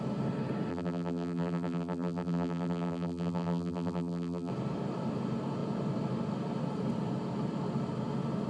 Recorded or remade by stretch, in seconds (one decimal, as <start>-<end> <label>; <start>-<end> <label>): 0.0-0.7 recorded; 0.7-4.5 remade; 4.5-8.5 recorded